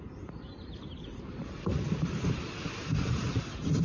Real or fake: fake